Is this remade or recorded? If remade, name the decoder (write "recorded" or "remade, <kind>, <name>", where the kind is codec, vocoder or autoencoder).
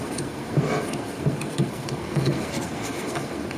remade, codec, SNAC